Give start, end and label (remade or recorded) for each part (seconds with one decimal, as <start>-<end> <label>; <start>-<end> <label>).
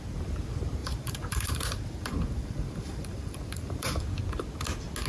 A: 0.0-0.8 recorded; 0.8-3.9 remade; 3.9-5.1 recorded